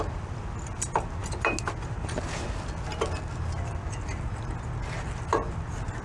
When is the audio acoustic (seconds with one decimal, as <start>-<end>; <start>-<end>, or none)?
0.0-6.0